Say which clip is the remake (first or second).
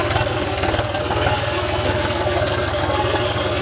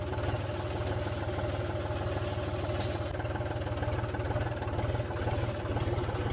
first